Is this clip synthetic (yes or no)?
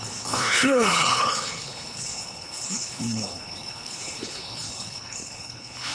yes